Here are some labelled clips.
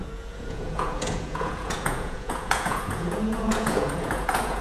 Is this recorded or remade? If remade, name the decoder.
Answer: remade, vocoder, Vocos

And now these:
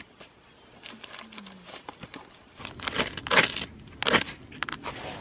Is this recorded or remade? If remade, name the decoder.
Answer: recorded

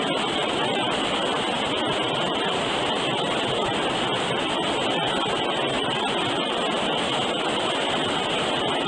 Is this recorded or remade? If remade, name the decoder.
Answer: recorded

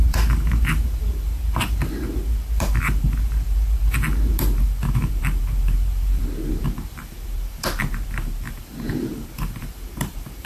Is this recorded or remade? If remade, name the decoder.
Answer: remade, vocoder, BigVGAN v2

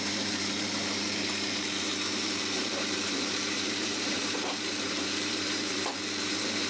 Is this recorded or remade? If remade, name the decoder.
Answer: remade, vocoder, BigVGAN v2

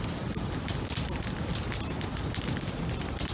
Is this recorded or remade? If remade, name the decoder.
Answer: recorded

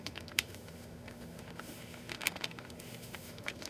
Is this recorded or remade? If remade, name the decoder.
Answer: remade, autoencoder, DAC-VAE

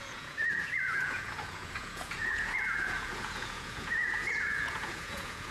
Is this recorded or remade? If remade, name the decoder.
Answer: remade, vocoder, Vocos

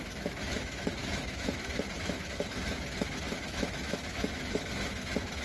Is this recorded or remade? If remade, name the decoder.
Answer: remade, autoencoder, DAC-VAE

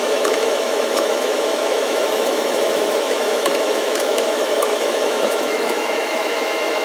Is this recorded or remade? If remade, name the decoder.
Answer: remade, autoencoder, DAC-VAE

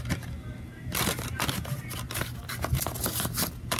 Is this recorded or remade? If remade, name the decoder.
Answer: recorded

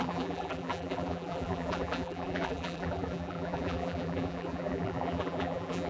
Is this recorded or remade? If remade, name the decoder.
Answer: remade, vocoder, BigVGAN v2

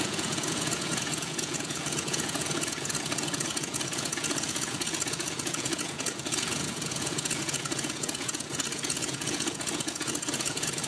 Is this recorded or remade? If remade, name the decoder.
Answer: remade, vocoder, Vocos